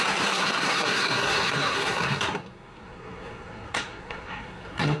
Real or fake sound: fake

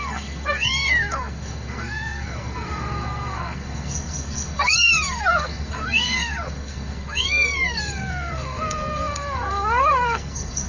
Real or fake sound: fake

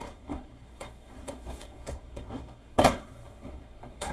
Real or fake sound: fake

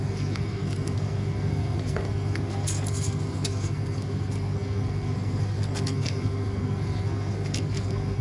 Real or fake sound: fake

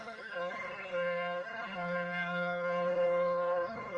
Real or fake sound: fake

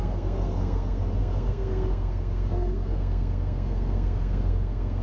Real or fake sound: fake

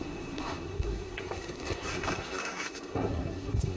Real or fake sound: fake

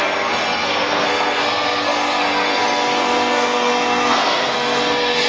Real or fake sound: fake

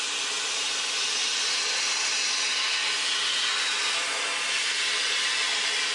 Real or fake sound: real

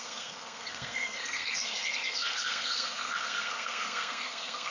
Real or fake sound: fake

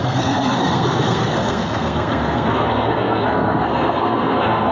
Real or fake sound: fake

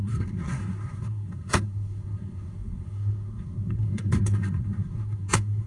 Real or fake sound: fake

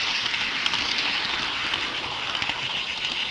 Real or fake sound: real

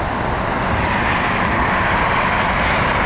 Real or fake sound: real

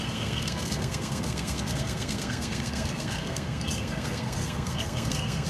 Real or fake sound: fake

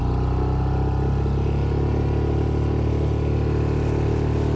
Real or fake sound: real